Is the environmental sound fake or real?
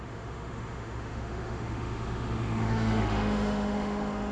fake